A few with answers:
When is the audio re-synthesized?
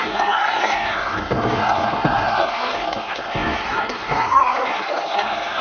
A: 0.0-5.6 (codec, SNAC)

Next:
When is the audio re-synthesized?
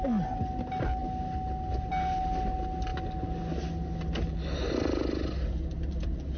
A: none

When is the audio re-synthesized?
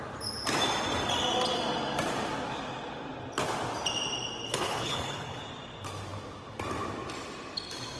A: 4.5-5.4 (codec, HILCodec)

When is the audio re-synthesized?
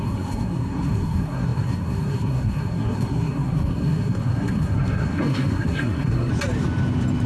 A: 0.0-6.3 (codec, SNAC)